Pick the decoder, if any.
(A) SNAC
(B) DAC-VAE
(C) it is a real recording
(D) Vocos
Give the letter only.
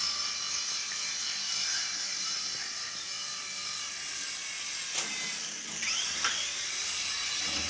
C